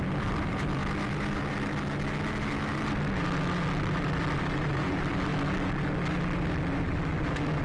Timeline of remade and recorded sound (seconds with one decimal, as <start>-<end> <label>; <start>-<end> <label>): 0.0-0.8 remade; 0.8-4.4 recorded; 4.4-5.3 remade; 5.3-6.8 recorded; 6.8-7.6 remade